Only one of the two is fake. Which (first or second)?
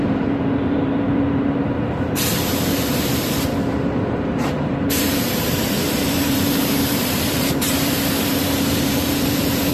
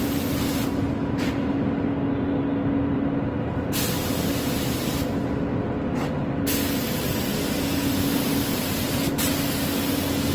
first